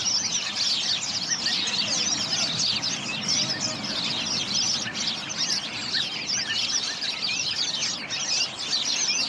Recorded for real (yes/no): yes